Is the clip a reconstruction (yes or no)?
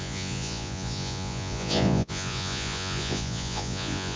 yes